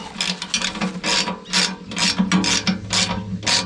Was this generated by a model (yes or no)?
no